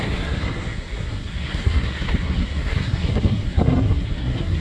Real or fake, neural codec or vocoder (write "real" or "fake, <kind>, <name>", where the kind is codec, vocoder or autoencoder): fake, codec, SNAC